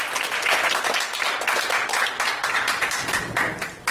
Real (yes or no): yes